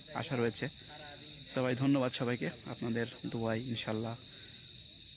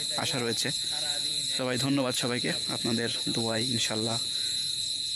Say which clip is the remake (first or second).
second